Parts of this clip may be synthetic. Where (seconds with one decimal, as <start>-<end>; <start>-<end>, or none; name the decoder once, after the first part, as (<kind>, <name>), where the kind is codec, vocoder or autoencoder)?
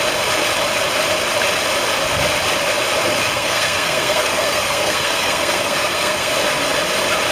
3.3-6.3 (codec, SNAC)